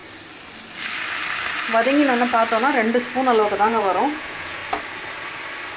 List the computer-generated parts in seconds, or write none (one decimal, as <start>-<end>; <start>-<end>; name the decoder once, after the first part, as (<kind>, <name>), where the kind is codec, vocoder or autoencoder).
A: 3.5-4.6 (vocoder, Vocos)